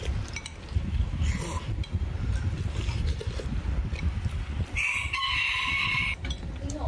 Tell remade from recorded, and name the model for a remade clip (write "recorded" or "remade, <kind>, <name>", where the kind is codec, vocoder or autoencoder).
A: recorded